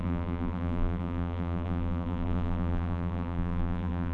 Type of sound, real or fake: fake